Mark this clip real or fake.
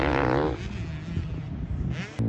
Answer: real